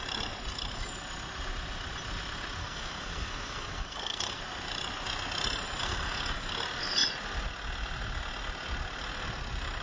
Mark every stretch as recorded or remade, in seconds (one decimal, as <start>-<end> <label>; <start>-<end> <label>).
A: 0.0-2.6 recorded; 2.6-4.4 remade; 4.4-5.8 recorded; 5.8-6.3 remade; 6.3-9.8 recorded